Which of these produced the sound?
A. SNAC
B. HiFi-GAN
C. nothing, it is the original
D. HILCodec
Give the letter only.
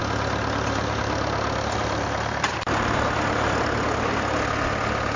C